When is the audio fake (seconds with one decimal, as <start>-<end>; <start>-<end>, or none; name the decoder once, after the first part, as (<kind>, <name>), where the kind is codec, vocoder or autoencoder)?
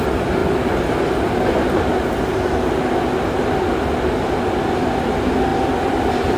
0.4-1.0 (vocoder, BigVGAN v2); 5.5-6.4